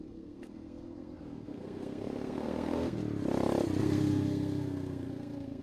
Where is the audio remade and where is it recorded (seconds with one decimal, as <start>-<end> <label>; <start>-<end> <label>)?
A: 0.0-3.0 remade; 3.0-3.8 recorded; 3.8-5.6 remade